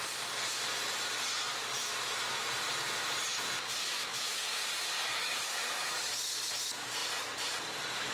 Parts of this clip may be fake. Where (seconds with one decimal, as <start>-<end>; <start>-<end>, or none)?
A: 3.8-4.4; 5.2-6.1